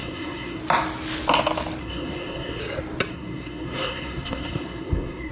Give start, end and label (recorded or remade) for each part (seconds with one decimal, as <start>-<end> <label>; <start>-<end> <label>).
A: 0.0-0.6 remade; 0.6-1.8 recorded; 1.8-2.6 remade; 2.6-3.1 recorded; 3.1-5.3 remade